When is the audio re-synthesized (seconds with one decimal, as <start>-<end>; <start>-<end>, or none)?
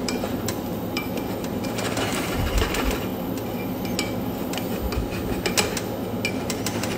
0.0-3.1; 6.3-7.0